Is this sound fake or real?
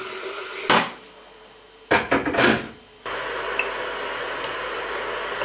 real